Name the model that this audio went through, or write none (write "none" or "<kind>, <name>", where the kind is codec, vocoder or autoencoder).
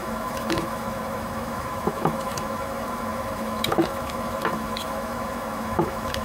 autoencoder, DAC-VAE